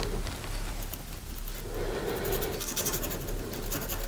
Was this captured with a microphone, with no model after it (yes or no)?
yes